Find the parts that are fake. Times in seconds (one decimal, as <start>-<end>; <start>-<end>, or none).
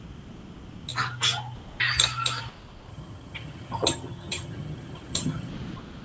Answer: 2.9-5.5